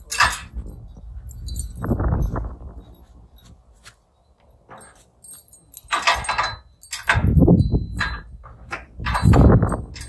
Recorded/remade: recorded